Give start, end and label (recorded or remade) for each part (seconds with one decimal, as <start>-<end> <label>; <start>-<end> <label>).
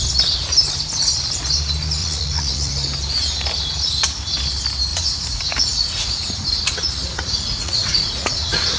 0.0-2.0 recorded; 2.0-2.7 remade; 2.7-4.9 recorded; 4.9-8.8 remade